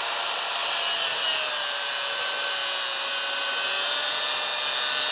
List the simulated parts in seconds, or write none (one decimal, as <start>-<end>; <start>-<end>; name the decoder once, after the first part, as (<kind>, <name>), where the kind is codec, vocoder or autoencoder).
none